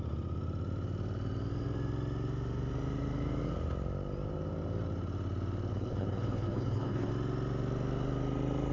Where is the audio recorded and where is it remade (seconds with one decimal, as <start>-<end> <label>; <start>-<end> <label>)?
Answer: 0.0-5.7 recorded; 5.7-7.1 remade; 7.1-8.7 recorded